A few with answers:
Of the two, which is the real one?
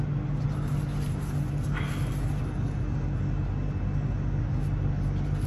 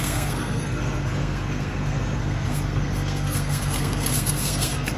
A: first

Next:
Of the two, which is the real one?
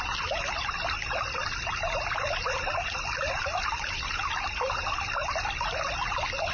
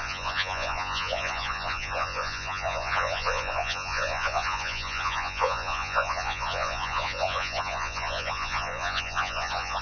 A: first